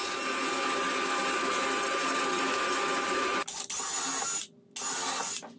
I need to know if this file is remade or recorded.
recorded